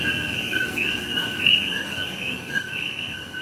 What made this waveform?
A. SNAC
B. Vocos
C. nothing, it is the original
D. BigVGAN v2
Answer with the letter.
A